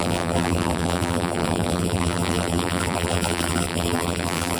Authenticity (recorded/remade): remade